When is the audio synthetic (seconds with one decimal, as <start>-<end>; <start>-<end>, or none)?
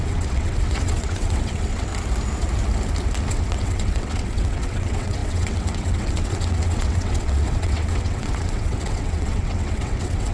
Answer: 0.0-1.9; 3.3-10.3